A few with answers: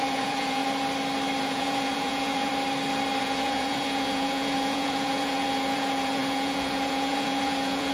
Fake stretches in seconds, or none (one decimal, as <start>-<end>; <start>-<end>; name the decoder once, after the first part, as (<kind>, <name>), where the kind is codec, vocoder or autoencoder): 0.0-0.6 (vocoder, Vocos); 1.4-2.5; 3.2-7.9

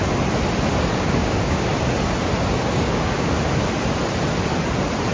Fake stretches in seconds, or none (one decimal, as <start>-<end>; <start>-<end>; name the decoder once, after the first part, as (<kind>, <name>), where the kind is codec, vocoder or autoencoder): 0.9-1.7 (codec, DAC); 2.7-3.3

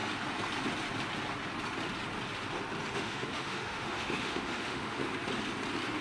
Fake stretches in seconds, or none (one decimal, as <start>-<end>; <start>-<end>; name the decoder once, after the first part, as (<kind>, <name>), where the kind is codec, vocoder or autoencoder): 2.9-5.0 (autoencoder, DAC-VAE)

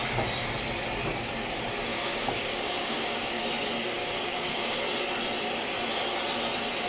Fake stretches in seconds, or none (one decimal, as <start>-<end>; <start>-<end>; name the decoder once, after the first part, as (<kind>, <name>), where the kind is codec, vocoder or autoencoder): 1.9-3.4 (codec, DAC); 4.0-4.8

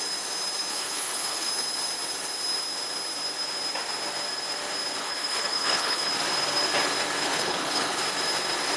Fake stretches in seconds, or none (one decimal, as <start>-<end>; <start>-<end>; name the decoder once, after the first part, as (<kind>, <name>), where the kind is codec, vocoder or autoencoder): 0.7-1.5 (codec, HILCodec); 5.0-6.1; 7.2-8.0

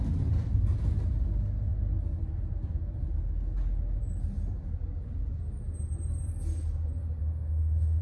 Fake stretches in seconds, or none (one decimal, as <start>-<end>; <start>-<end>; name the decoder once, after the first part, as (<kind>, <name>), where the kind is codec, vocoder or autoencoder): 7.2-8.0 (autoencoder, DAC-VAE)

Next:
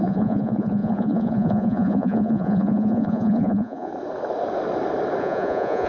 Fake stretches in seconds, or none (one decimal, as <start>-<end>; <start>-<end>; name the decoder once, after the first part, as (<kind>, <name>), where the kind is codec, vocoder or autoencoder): 0.0-3.9 (vocoder, Vocos); 5.2-5.9